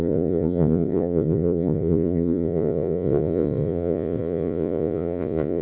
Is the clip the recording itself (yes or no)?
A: no